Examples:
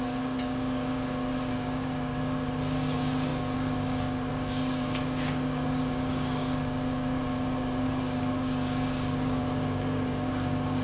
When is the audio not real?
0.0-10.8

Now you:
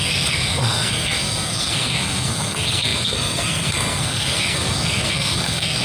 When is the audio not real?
0.0-5.8

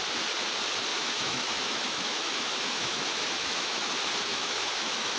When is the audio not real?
0.9-3.9; 4.3-5.2